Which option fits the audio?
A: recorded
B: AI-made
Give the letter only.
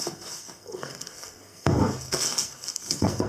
B